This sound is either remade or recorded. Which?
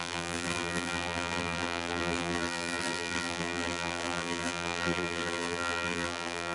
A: remade